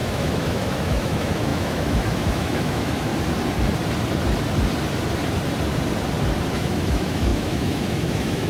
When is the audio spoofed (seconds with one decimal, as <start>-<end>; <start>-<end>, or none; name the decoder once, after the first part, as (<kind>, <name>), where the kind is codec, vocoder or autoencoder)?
0.0-3.1 (autoencoder, DAC-VAE); 6.5-8.5